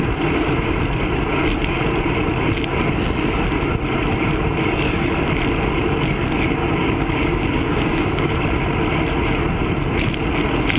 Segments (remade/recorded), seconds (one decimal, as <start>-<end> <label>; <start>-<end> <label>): 0.0-6.6 recorded; 6.6-8.3 remade; 8.3-10.8 recorded